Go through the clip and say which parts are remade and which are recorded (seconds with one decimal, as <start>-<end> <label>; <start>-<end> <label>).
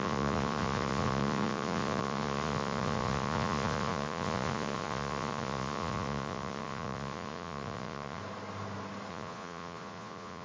0.0-8.2 remade; 8.2-9.1 recorded; 9.1-10.4 remade